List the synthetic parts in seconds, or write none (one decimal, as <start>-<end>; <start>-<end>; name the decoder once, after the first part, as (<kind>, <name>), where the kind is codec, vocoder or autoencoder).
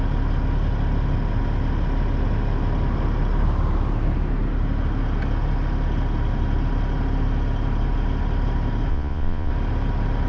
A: 8.9-9.5 (vocoder, Vocos)